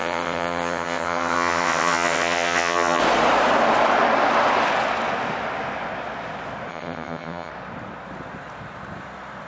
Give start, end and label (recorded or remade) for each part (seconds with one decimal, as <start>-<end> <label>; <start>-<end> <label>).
0.0-3.0 remade; 3.0-6.7 recorded; 6.7-7.5 remade; 7.5-9.5 recorded